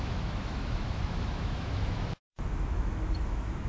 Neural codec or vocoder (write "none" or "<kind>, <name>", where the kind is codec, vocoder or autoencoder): autoencoder, DAC-VAE